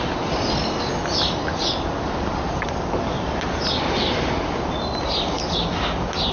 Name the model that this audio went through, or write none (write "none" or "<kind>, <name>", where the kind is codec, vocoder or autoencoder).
none